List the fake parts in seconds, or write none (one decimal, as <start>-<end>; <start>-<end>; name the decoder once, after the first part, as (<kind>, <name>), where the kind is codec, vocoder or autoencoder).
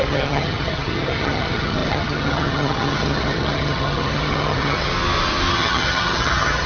0.0-4.9 (vocoder, HiFi-GAN); 5.5-6.7